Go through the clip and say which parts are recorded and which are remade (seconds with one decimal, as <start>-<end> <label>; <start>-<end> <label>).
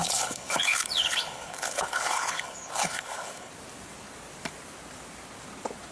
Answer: 0.0-3.5 remade; 3.5-5.9 recorded